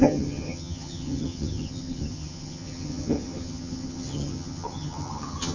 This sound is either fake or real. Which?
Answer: fake